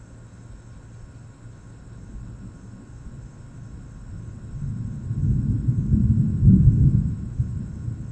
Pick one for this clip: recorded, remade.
recorded